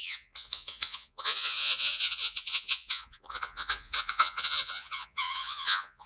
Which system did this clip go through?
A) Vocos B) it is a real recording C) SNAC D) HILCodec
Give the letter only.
A